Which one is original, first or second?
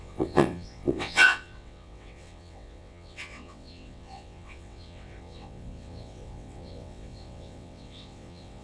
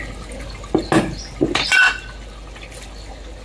second